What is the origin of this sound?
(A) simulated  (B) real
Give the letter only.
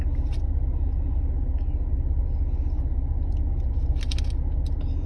B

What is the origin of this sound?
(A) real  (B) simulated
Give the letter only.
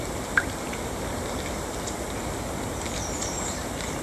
A